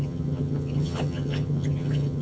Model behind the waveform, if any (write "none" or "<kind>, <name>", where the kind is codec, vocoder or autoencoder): vocoder, HiFi-GAN